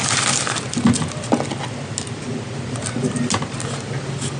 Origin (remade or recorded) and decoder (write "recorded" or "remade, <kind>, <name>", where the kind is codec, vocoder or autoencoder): recorded